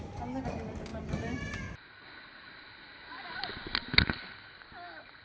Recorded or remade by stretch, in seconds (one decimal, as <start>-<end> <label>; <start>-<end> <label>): 0.0-5.2 recorded